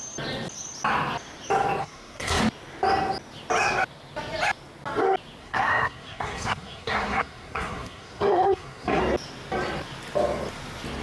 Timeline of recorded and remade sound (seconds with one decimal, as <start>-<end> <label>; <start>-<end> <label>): 0.0-1.8 recorded; 1.8-2.4 remade; 2.4-5.4 recorded; 5.4-9.0 remade; 9.0-11.0 recorded